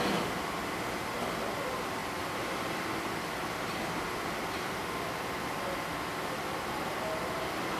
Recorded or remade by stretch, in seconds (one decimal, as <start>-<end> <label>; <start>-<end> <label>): 0.0-7.8 recorded